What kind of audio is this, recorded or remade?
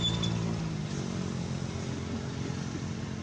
recorded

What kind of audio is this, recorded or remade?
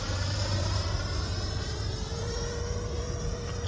remade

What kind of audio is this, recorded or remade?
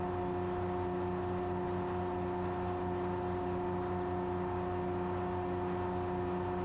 recorded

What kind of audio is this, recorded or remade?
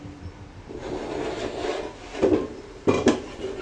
remade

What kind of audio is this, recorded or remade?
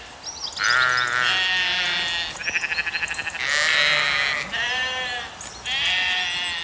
recorded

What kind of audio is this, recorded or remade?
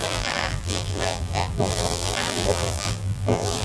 remade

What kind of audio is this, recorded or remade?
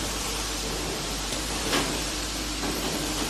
remade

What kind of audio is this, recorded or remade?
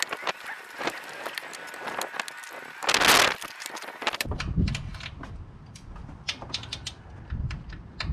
recorded